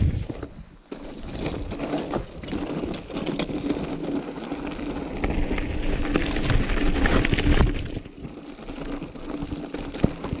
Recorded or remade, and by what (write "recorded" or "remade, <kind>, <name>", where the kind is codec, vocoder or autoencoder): recorded